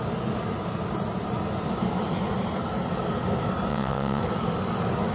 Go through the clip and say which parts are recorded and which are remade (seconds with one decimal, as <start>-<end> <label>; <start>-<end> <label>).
0.0-3.7 recorded; 3.7-4.2 remade; 4.2-5.1 recorded